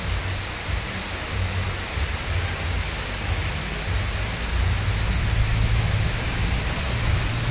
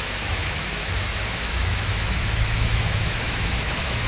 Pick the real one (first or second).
first